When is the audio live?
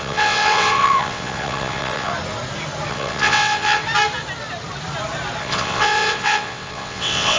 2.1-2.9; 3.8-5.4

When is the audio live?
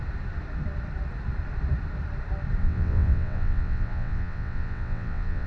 0.0-2.6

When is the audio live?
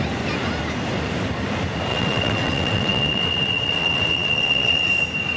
0.0-1.9; 4.9-5.4